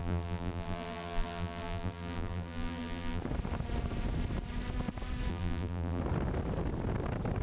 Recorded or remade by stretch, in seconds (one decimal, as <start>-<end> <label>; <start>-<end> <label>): 0.0-3.2 remade; 3.2-5.3 recorded; 5.3-6.0 remade; 6.0-7.4 recorded